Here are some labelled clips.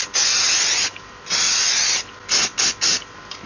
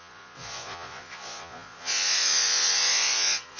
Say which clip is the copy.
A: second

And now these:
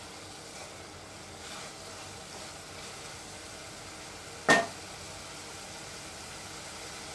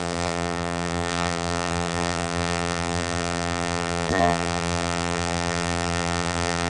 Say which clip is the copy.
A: second